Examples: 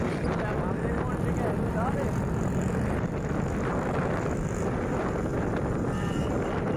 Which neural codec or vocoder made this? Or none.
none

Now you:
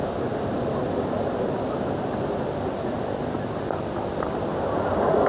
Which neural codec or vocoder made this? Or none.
none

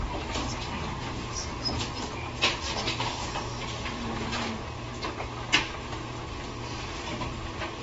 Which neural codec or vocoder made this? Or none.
none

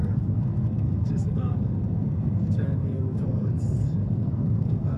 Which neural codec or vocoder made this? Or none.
codec, SNAC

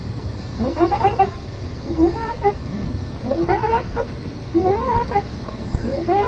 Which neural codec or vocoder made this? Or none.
codec, SNAC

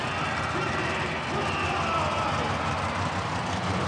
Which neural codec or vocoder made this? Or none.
none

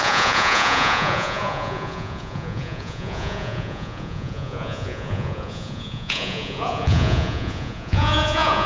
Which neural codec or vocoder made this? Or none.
vocoder, Vocos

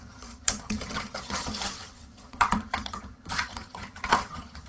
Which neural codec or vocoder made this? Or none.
vocoder, HiFi-GAN